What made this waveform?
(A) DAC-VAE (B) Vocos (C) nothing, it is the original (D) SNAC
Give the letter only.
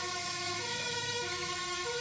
A